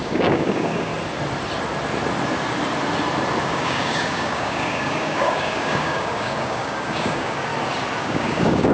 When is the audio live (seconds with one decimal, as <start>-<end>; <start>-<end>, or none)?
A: 0.9-3.4; 7.5-8.0